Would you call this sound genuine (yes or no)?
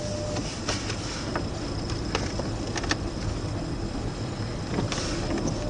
yes